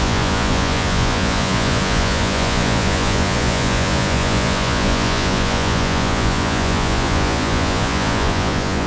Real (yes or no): no